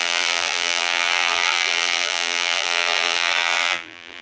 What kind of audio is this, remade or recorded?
remade